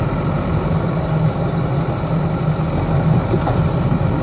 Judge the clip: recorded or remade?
recorded